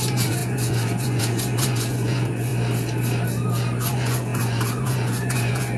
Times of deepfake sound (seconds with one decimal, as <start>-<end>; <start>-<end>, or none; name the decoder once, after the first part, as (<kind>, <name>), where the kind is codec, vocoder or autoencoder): 0.0-2.5 (vocoder, Vocos); 3.8-5.8